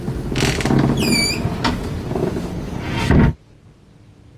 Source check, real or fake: real